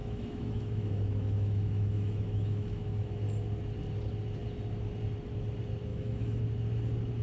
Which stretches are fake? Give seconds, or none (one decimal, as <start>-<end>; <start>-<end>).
0.0-3.2; 5.9-6.4